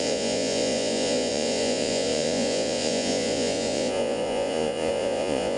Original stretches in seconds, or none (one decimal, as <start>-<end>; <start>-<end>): none